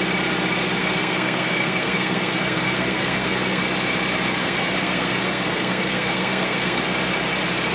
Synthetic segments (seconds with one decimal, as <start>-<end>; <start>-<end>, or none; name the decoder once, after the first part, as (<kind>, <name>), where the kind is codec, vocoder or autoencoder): 0.8-3.6 (codec, SNAC); 4.4-6.8